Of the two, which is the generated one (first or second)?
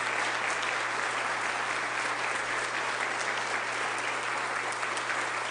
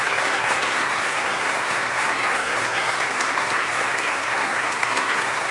second